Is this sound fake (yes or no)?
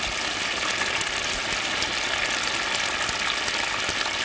no